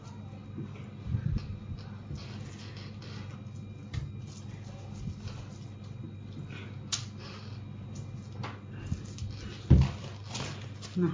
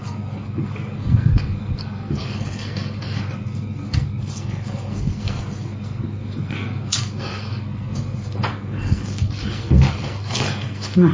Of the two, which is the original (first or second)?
first